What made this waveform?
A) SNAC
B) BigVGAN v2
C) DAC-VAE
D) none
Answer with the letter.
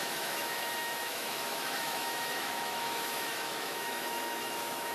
C